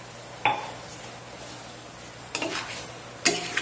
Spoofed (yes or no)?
no